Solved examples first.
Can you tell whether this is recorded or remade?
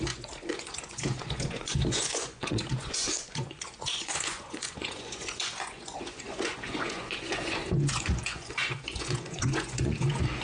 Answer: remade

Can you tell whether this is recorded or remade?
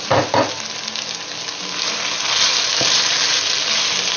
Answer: recorded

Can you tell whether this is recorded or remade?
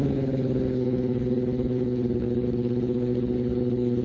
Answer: remade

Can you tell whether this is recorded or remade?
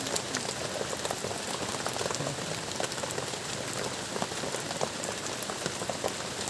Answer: recorded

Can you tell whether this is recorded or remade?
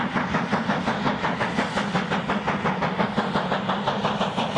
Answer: recorded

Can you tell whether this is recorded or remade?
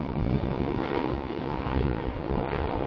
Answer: remade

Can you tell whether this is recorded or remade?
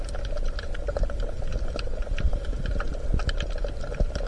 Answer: recorded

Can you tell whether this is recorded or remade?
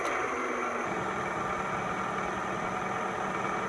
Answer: recorded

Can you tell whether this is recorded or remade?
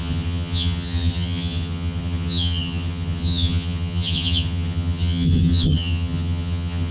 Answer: remade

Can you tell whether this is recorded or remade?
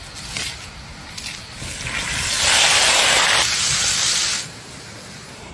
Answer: recorded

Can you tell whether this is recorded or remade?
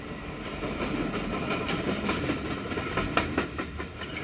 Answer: recorded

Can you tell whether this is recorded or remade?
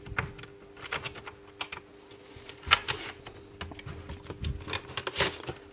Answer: recorded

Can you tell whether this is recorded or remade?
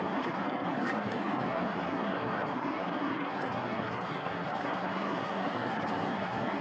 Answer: remade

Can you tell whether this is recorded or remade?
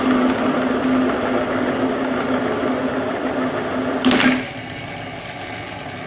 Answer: recorded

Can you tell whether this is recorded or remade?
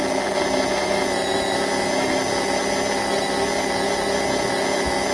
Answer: recorded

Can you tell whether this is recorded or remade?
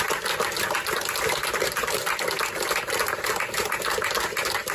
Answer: recorded